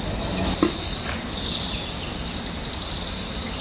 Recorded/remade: recorded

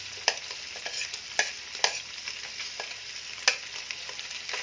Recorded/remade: recorded